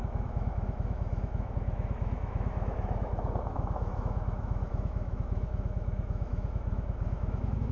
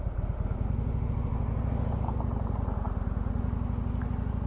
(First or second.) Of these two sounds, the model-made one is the first